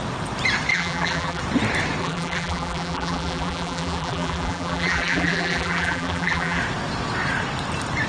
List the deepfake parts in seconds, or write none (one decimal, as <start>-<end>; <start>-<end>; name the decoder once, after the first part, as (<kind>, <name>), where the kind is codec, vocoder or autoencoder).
0.7-1.4 (vocoder, BigVGAN v2); 2.0-6.6